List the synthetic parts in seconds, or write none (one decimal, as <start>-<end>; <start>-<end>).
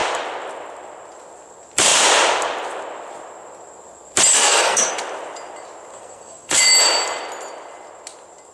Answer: 4.3-4.9; 5.9-6.6